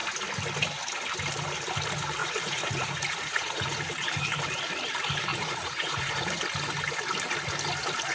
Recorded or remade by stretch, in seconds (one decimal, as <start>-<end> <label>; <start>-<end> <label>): 0.0-2.2 recorded; 2.2-3.8 remade; 3.8-5.3 recorded; 5.3-6.4 remade; 6.4-8.1 recorded